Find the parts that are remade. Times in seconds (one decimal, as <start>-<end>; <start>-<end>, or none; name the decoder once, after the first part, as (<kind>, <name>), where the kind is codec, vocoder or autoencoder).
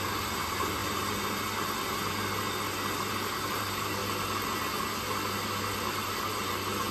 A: 0.0-0.8 (vocoder, BigVGAN v2); 3.1-4.0; 5.9-6.9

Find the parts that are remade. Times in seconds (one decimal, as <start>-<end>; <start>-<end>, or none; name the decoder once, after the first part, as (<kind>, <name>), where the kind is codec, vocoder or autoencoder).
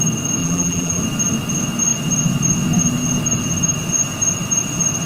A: 0.4-1.0 (vocoder, BigVGAN v2)